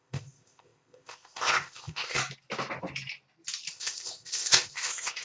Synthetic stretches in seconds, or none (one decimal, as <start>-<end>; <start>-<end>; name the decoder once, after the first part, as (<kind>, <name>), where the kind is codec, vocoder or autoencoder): 0.0-2.2 (codec, ZipCodec); 3.7-5.2